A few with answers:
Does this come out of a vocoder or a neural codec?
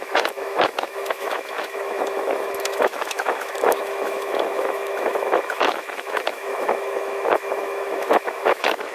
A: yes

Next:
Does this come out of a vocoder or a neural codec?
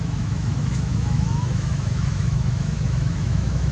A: yes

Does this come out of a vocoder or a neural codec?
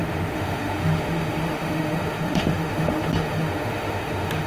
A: yes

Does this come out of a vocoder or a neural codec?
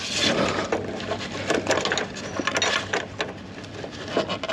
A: no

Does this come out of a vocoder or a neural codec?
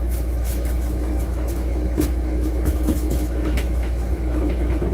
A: yes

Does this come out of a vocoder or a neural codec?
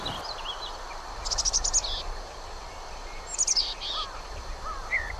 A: no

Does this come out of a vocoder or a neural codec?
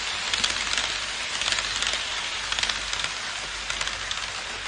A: no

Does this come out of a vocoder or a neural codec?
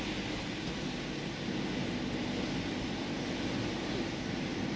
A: no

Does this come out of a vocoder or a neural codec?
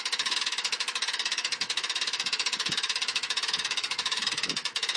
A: yes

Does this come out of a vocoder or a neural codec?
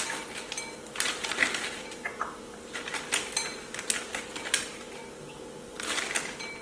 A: no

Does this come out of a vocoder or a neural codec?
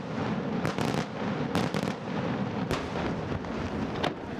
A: no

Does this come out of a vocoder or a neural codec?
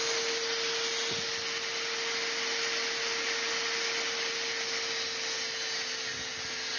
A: no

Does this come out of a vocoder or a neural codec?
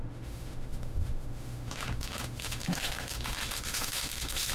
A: yes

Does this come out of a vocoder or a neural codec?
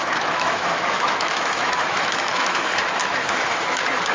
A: yes